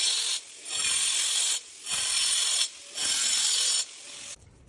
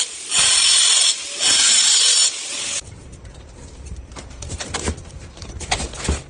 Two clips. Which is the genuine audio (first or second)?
first